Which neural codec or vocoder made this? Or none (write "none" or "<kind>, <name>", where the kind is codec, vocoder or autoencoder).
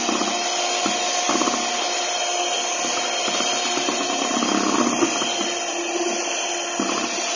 none